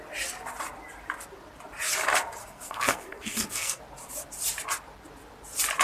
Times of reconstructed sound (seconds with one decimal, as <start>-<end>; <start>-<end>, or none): 2.4-3.8